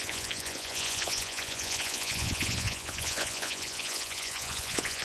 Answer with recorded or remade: remade